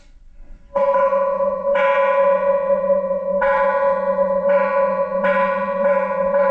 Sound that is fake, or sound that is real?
fake